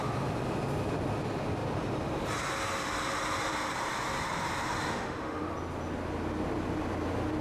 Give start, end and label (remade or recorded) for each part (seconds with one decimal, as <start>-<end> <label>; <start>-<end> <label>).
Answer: 0.0-4.9 recorded; 4.9-5.4 remade; 5.4-7.4 recorded